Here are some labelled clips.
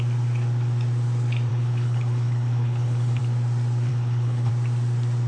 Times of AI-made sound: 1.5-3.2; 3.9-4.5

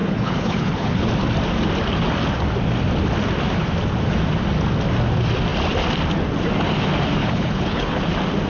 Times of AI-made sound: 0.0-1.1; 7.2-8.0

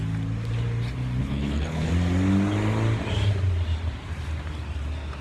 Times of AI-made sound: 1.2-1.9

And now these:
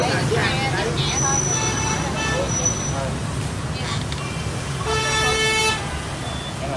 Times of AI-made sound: none

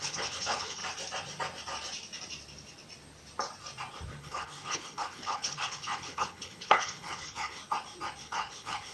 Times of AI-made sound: 0.0-0.8; 4.2-7.6; 8.2-8.9

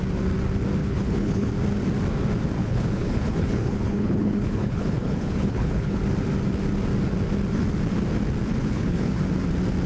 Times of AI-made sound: 0.8-1.5; 2.6-6.0; 8.6-9.2

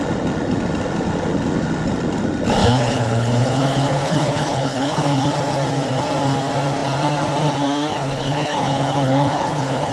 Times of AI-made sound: 2.6-5.2; 7.9-9.9